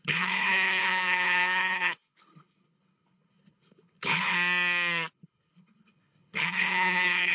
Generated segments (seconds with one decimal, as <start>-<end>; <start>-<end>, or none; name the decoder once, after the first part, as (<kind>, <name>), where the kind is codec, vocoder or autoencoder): 0.0-4.3 (codec, HILCodec); 5.1-7.3